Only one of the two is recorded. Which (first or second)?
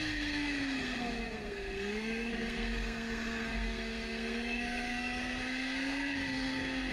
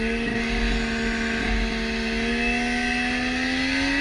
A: second